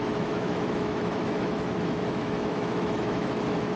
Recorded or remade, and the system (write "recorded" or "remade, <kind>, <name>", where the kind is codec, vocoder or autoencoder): remade, autoencoder, DAC-VAE